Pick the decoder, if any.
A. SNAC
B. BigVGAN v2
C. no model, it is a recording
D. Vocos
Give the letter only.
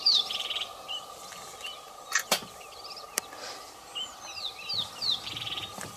B